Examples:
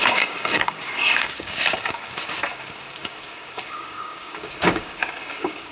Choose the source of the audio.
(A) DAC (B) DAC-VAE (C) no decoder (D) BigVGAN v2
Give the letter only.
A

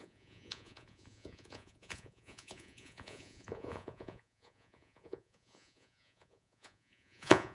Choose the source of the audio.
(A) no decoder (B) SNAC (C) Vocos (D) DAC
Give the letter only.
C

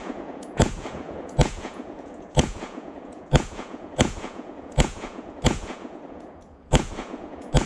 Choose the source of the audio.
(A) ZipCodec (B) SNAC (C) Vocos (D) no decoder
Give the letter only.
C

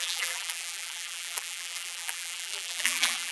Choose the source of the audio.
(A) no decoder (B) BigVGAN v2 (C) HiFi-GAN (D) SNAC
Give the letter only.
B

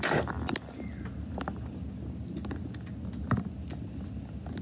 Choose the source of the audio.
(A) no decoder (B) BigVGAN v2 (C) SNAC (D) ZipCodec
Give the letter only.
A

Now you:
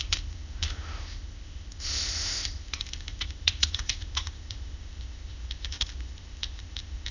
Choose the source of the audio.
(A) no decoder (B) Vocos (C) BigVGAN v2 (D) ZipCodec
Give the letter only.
D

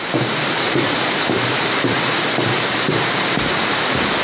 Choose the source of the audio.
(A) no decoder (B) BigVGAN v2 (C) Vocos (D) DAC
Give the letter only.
B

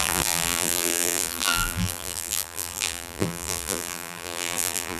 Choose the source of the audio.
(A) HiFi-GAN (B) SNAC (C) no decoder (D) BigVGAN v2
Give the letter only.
D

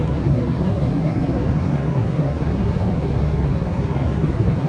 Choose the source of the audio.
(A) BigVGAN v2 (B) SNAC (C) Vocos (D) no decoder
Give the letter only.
B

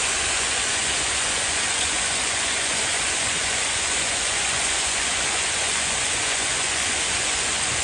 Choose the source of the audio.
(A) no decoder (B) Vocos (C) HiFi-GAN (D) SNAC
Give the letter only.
B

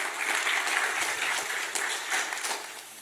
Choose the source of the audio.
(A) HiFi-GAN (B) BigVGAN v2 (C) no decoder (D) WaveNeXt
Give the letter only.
C